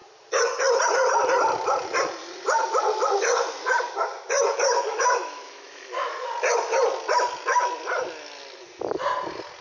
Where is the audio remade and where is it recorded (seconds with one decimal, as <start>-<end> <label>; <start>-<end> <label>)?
0.0-4.9 recorded; 4.9-6.3 remade; 6.3-9.6 recorded